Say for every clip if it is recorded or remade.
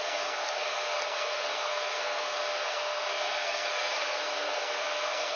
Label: remade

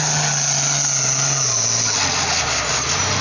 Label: recorded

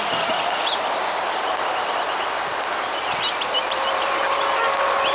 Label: recorded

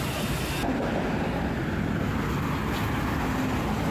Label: recorded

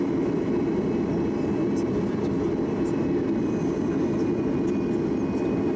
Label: recorded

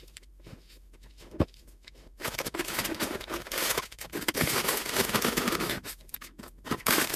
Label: remade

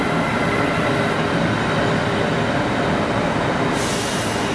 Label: recorded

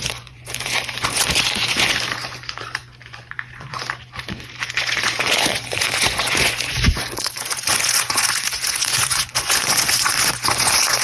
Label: remade